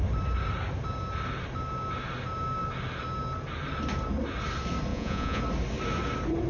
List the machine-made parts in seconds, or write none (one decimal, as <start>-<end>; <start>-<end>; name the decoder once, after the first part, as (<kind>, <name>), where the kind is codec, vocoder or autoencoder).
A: 4.9-5.4 (vocoder, Vocos)